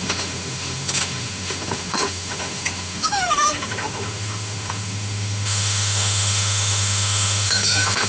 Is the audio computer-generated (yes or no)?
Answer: yes